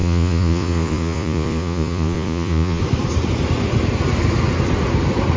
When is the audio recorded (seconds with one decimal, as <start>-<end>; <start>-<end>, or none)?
2.8-5.4